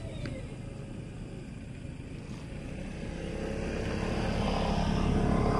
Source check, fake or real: real